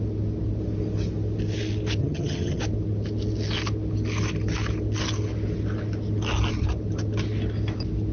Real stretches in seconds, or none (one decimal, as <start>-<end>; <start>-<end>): 0.0-2.0; 2.6-8.1